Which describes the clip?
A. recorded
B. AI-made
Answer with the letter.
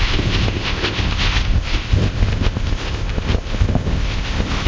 B